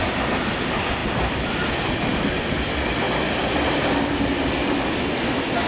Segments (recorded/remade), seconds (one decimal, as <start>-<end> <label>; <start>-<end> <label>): 0.0-5.7 recorded